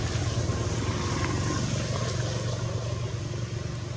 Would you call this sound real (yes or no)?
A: yes